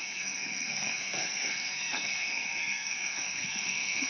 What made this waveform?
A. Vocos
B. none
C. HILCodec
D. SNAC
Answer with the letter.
D